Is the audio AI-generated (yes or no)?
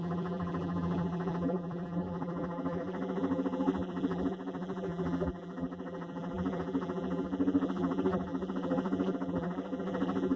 yes